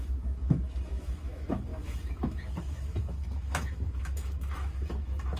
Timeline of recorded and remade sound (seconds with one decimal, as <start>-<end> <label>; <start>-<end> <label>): 0.0-5.4 remade